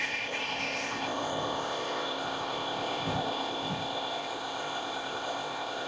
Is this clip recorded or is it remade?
remade